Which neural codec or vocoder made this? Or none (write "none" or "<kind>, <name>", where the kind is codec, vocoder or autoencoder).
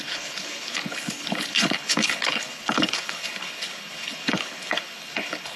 codec, HILCodec